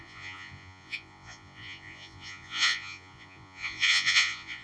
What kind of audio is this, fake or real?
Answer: fake